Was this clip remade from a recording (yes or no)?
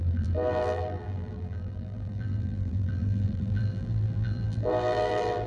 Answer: yes